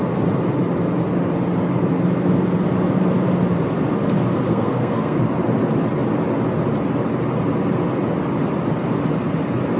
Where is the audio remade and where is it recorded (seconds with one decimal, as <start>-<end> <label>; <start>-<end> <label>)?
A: 0.0-4.5 recorded; 4.5-5.2 remade; 5.2-9.8 recorded